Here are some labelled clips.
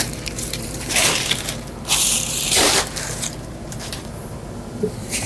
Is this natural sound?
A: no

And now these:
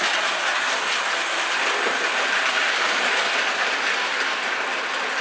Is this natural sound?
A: yes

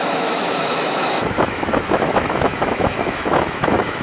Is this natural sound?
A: no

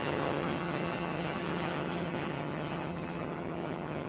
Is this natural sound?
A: no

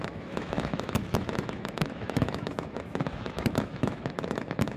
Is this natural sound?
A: no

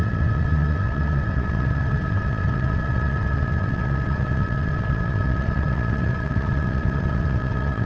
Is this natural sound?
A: no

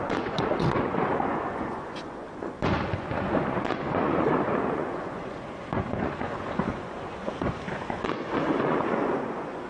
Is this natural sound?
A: no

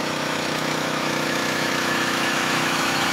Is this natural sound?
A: no